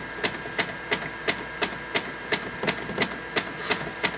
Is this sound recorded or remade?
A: recorded